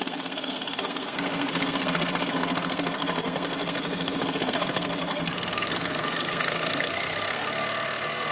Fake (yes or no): yes